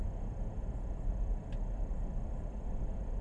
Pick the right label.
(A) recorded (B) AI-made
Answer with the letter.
A